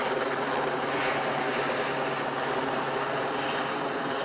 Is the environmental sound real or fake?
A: real